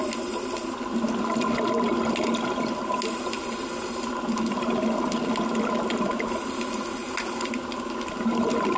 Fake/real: real